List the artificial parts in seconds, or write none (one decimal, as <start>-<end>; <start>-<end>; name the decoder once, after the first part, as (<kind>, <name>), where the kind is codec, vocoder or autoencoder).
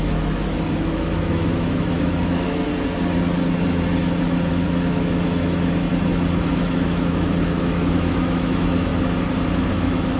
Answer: 0.0-2.7 (autoencoder, DAC-VAE); 4.5-5.9; 6.5-8.9; 9.7-10.2